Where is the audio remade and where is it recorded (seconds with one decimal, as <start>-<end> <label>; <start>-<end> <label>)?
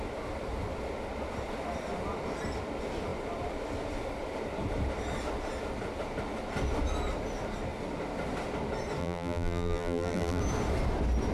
0.0-9.0 recorded; 9.0-10.4 remade; 10.4-11.3 recorded